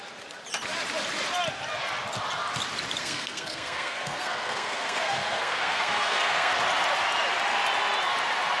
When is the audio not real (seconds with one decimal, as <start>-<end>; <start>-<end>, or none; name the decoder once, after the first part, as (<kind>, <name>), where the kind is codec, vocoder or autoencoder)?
3.0-6.5 (codec, SNAC)